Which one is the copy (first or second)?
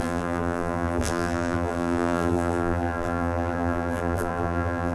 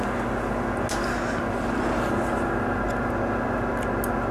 first